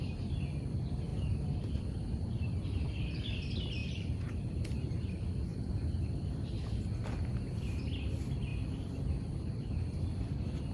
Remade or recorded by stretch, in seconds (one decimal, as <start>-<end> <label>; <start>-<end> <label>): 0.0-3.8 recorded; 3.8-4.4 remade; 4.4-5.5 recorded; 5.5-6.5 remade; 6.5-10.7 recorded